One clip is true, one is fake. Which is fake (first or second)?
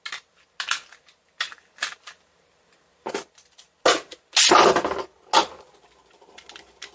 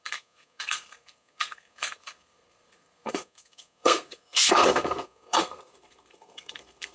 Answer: second